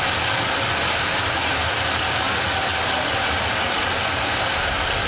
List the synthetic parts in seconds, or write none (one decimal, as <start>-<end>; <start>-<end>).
none